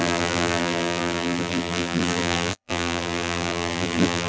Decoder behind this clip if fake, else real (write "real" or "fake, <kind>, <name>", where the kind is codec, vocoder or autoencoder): fake, vocoder, BigVGAN v2